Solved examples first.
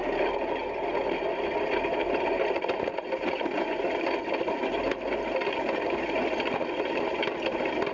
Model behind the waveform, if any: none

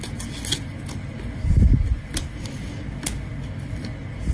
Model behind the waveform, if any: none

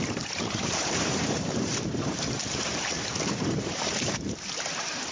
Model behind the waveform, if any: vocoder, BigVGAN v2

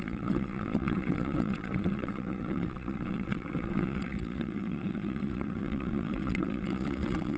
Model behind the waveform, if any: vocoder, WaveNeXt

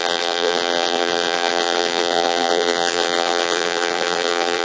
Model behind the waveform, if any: vocoder, BigVGAN v2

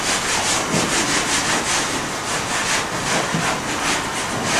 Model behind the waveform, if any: none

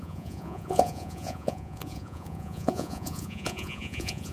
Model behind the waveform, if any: vocoder, Vocos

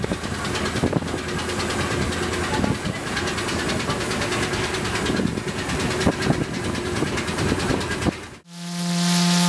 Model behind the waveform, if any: none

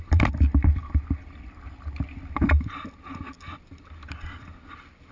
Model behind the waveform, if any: none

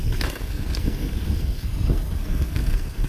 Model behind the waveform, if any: codec, SNAC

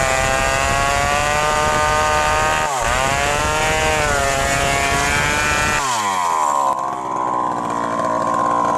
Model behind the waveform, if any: none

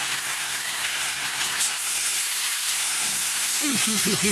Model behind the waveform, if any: codec, SNAC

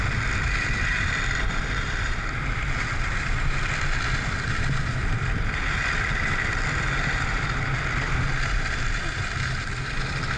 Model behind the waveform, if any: none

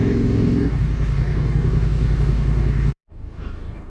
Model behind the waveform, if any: codec, DAC